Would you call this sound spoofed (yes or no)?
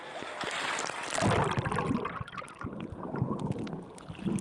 no